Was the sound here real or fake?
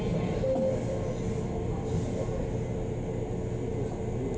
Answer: real